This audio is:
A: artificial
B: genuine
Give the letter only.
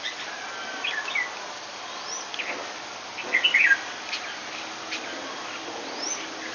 B